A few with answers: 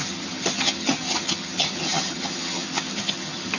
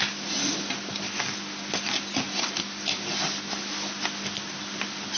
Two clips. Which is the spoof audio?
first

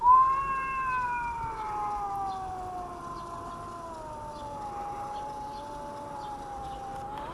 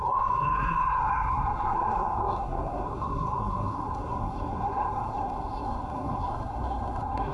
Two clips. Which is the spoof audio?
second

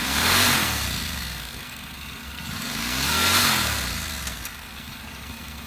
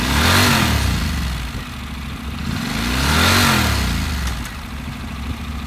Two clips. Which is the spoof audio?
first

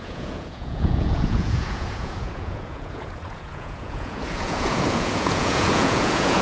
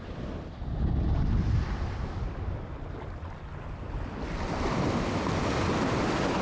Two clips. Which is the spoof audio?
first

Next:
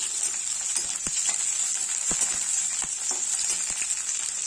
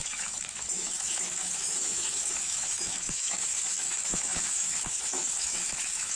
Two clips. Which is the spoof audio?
second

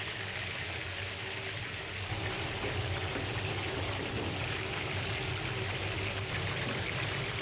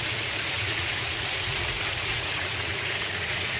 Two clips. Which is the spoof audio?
second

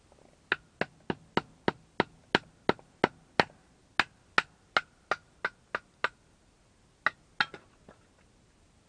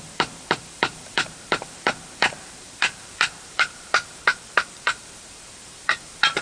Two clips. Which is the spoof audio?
second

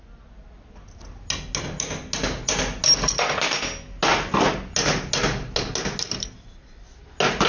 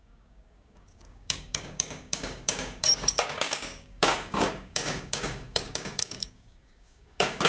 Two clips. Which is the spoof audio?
second